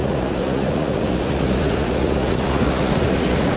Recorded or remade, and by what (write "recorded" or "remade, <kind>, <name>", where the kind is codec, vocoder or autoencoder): remade, vocoder, Vocos